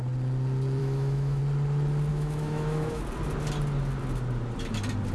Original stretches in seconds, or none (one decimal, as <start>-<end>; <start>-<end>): 0.0-0.8; 1.4-2.1; 3.0-5.1